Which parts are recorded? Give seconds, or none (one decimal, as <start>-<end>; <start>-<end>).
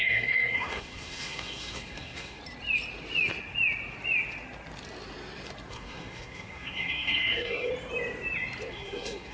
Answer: 2.4-5.7; 7.7-8.7